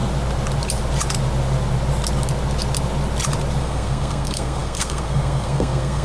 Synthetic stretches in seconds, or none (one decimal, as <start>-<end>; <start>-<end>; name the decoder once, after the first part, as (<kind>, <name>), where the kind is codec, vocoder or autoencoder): 3.6-6.0 (codec, SNAC)